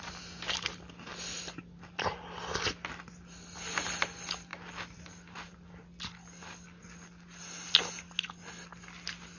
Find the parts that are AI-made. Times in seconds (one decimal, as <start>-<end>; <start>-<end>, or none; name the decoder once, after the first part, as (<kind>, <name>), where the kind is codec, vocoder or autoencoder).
none